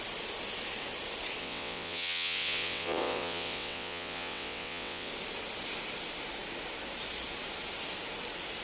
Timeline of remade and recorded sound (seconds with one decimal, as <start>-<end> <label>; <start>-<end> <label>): 0.0-1.4 recorded; 1.4-5.1 remade; 5.1-8.6 recorded